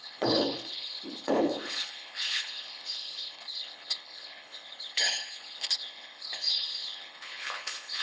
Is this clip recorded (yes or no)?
no